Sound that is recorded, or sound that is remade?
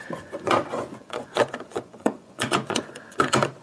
remade